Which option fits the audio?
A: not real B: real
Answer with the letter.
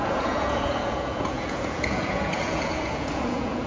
A